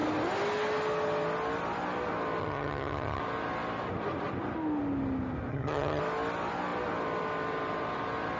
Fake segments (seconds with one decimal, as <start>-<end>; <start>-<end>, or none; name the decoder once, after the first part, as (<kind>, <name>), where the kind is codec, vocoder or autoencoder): 2.4-3.2 (vocoder, HiFi-GAN); 5.5-6.0